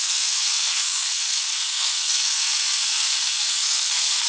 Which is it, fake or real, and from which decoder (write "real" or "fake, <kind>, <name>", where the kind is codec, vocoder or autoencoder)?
fake, codec, SNAC